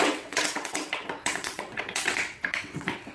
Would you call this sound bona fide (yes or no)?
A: no